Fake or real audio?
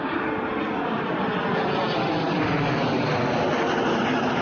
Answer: real